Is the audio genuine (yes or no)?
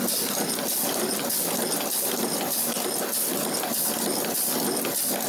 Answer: yes